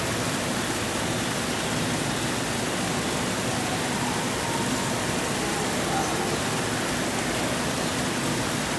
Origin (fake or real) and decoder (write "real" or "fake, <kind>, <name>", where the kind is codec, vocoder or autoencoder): real